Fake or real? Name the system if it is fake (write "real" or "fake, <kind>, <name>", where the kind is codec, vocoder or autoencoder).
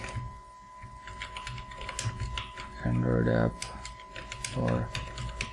real